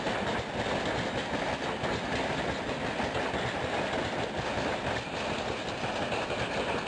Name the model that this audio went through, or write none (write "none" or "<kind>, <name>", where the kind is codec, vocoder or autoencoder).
none